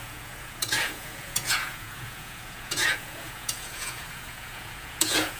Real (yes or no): no